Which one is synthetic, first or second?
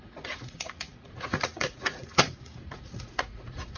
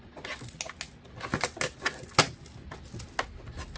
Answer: first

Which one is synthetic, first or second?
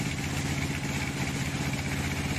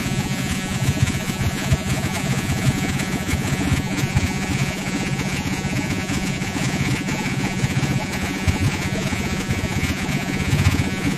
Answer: second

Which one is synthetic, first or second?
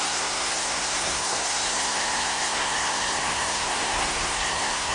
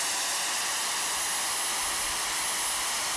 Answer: first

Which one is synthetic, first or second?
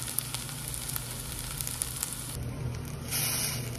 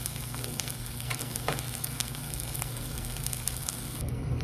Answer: second